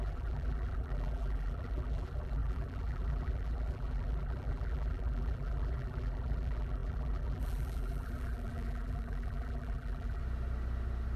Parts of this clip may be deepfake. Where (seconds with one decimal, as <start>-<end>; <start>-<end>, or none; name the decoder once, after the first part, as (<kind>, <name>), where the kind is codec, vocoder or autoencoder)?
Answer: 0.0-10.2 (vocoder, BigVGAN v2)